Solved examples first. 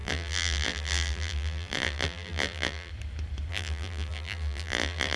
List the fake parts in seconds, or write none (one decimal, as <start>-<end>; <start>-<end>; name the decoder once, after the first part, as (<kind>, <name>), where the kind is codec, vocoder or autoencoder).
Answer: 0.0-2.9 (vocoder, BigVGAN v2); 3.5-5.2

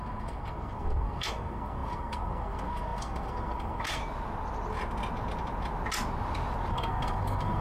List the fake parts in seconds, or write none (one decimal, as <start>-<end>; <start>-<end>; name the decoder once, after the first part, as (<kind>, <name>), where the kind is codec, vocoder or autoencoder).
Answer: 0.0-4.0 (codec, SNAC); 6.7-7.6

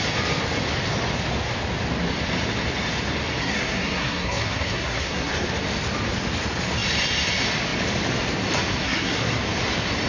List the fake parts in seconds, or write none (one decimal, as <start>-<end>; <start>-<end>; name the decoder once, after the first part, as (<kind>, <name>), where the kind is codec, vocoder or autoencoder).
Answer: 3.4-5.3 (codec, SNAC); 8.8-9.4

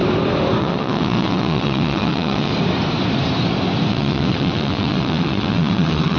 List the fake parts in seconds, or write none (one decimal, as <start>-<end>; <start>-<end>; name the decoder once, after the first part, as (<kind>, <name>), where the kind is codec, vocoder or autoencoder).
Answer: 0.6-2.5 (vocoder, WaveNeXt); 3.9-6.2

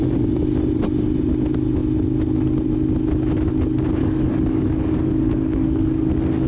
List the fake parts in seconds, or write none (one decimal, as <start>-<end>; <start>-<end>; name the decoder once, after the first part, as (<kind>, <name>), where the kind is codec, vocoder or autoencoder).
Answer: 4.0-6.1 (codec, DAC)

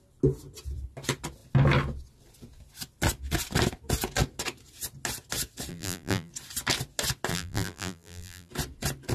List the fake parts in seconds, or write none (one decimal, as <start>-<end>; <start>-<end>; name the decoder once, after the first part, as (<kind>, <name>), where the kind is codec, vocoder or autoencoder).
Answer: 5.7-6.3 (vocoder, BigVGAN v2); 7.3-8.5